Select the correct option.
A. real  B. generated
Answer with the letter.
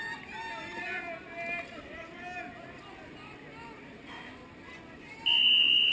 A